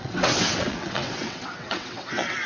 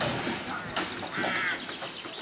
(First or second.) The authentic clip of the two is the second